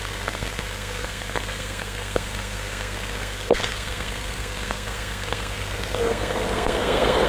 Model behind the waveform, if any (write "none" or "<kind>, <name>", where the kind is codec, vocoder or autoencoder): codec, SNAC